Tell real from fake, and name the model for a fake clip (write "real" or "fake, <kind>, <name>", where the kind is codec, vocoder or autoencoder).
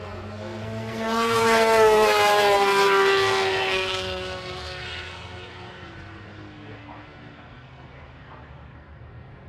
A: fake, codec, SNAC